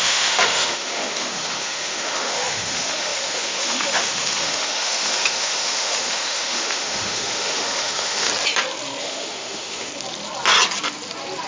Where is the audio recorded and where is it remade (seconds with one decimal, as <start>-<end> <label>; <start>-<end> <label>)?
0.0-8.3 remade; 8.3-9.0 recorded; 9.0-9.9 remade; 9.9-11.5 recorded